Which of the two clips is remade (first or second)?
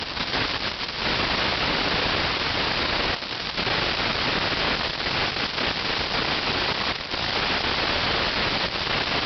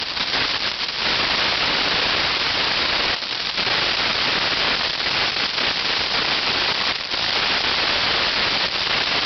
second